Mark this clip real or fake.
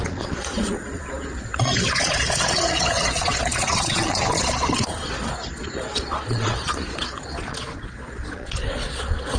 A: fake